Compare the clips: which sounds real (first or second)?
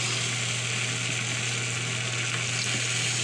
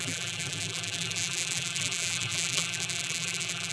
first